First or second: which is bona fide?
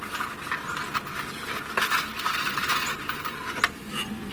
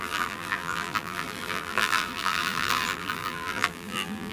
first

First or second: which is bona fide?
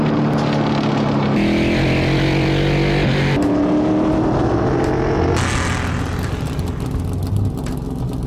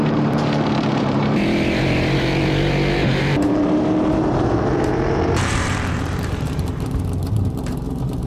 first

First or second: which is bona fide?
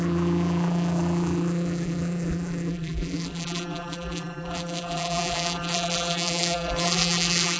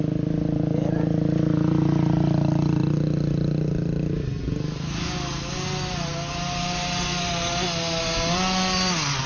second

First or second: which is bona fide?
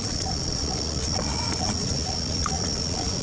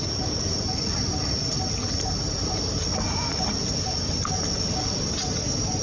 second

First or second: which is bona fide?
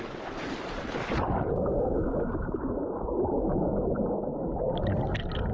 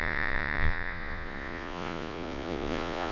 first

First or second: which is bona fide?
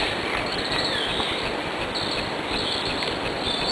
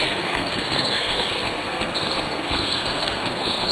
first